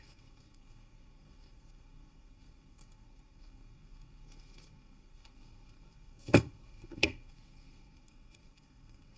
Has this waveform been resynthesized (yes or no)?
yes